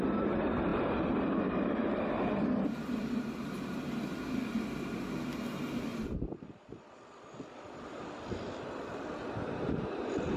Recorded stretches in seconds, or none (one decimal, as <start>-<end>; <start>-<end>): 0.0-0.7; 1.6-3.0; 4.0-5.9; 9.1-10.4